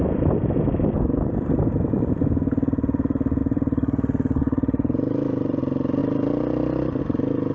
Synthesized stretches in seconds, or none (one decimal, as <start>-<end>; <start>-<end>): 3.4-5.6